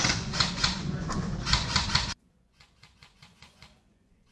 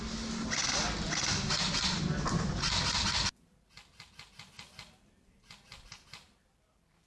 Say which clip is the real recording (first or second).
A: second